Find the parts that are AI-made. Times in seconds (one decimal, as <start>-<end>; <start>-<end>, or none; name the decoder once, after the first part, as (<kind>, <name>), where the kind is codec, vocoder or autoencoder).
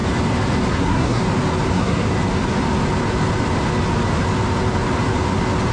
0.7-1.2 (codec, SNAC); 1.7-2.1